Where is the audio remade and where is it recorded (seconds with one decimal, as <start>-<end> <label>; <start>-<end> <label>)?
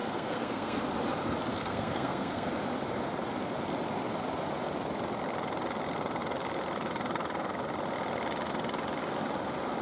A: 0.0-0.8 remade; 0.8-1.5 recorded; 1.5-2.5 remade; 2.5-9.8 recorded